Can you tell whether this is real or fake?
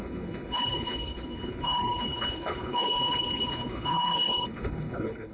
fake